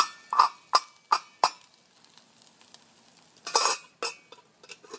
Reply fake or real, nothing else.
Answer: real